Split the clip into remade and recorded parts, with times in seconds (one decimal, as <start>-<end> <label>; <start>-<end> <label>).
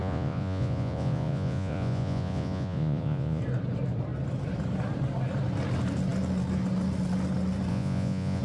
0.0-3.4 remade; 3.4-7.7 recorded; 7.7-8.4 remade